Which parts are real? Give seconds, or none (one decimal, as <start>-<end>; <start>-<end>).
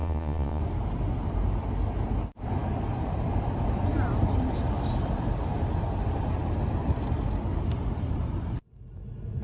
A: 0.6-9.4